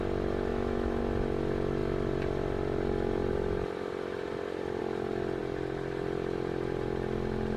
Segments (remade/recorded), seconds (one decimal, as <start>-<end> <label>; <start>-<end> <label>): 0.0-0.5 recorded; 0.5-1.0 remade; 1.0-7.6 recorded